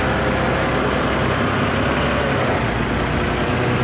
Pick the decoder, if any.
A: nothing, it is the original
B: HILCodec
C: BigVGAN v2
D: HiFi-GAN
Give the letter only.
A